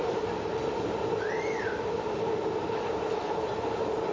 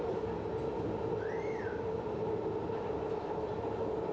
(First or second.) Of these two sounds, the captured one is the second